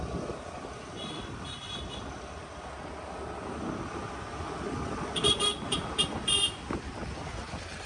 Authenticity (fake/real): real